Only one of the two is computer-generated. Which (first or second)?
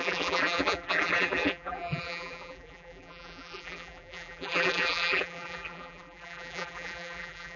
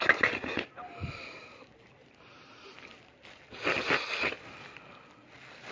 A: first